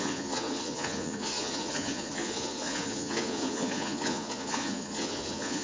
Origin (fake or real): fake